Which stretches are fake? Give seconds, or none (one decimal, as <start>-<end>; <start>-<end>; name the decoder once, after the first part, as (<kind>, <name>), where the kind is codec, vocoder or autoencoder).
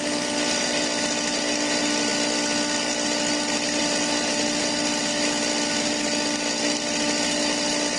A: none